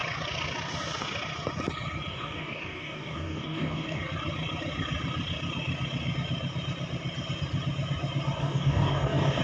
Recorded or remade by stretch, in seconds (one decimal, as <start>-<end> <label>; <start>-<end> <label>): 0.0-2.1 recorded; 2.1-4.0 remade; 4.0-8.4 recorded; 8.4-9.4 remade